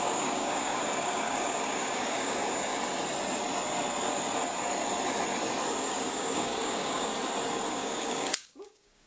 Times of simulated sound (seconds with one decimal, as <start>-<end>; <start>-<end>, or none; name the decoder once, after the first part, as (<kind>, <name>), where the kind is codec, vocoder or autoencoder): 0.0-2.7 (codec, DAC); 5.9-7.1; 7.7-9.1